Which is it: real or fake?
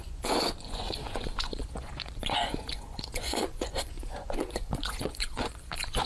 fake